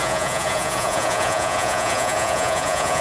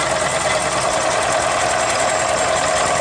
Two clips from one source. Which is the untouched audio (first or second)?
second